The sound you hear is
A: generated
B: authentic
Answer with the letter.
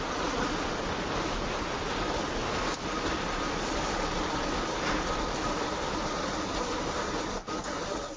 B